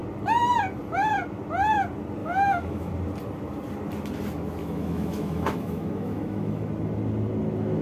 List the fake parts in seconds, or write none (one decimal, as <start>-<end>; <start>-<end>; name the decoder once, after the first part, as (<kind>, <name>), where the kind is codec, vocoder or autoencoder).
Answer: 2.2-2.9 (autoencoder, DAC-VAE); 4.6-6.7